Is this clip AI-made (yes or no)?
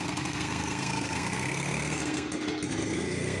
yes